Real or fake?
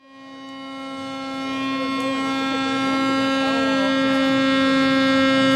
real